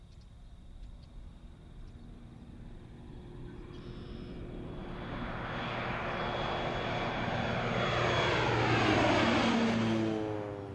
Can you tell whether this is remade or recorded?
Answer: recorded